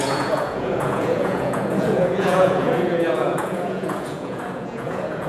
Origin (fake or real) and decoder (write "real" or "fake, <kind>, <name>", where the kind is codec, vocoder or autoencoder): fake, vocoder, Vocos